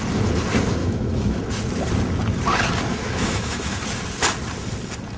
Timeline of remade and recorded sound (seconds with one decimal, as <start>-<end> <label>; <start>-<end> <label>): 0.0-0.8 recorded; 0.8-1.4 remade; 1.4-2.9 recorded; 2.9-3.8 remade; 3.8-5.2 recorded